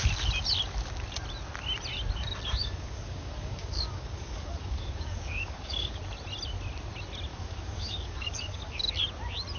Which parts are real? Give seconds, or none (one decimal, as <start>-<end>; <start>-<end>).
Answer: 0.0-2.6; 6.0-7.3; 8.9-9.6